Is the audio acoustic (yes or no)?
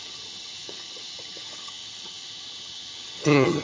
no